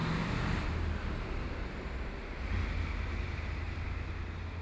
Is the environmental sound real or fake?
real